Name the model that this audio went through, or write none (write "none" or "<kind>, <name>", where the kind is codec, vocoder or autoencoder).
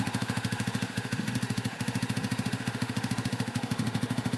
autoencoder, DAC-VAE